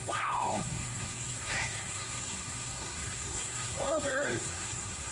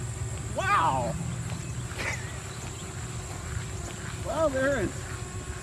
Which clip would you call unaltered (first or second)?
second